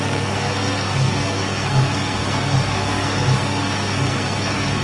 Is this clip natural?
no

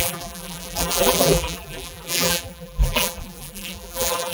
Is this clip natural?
no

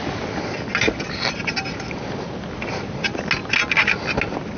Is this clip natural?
yes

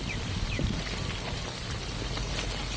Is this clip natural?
yes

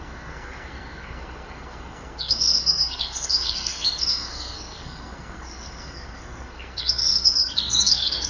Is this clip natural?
no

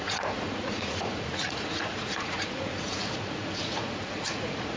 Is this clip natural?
no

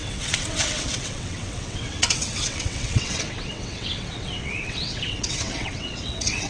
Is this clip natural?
no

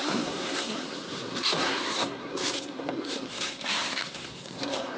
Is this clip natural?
no